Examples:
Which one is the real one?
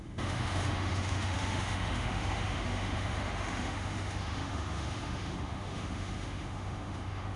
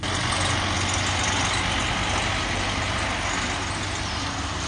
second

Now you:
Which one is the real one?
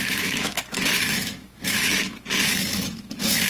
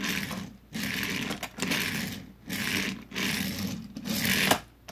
second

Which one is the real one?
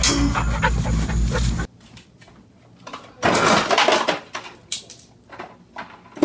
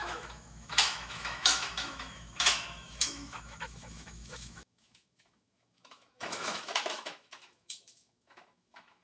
first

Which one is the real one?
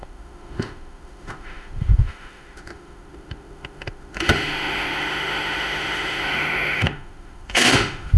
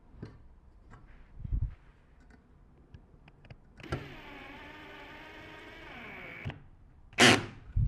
second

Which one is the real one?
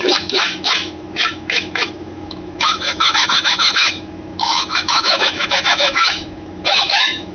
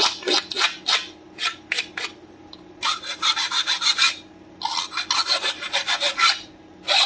second